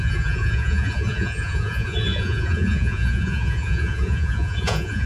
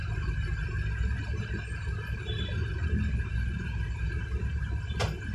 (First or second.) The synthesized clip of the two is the first